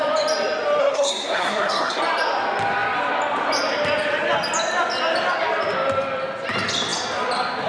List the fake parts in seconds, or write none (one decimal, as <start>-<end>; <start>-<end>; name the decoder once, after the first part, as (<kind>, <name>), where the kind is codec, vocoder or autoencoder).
0.8-2.0 (codec, SNAC)